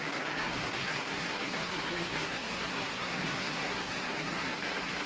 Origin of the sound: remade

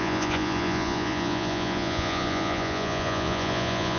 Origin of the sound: remade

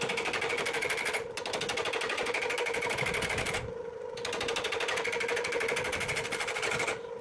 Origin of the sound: recorded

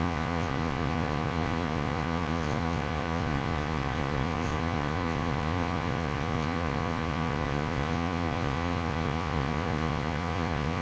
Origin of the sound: remade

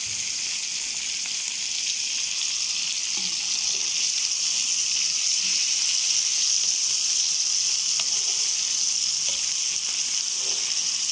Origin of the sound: recorded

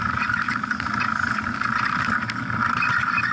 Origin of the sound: recorded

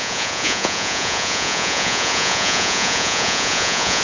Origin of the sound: remade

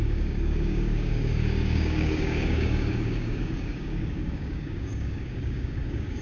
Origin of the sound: remade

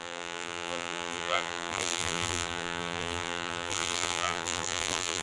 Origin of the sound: remade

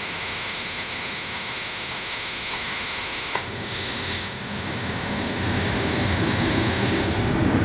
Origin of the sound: remade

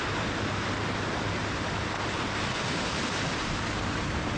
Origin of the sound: recorded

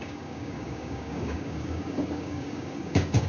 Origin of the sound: remade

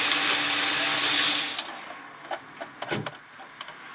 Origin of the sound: recorded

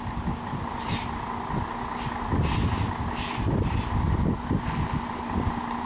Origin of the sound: recorded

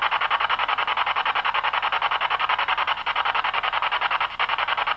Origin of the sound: recorded